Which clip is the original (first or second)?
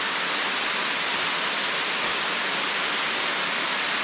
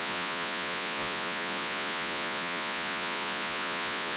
first